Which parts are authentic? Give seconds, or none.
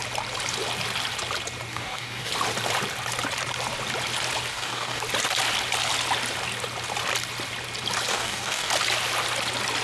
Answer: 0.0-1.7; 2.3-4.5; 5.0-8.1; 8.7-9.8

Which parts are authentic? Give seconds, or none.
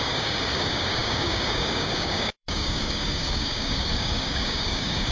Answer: none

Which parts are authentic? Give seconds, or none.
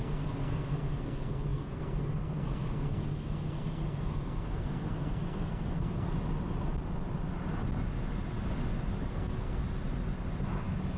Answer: 6.1-9.1; 9.6-11.0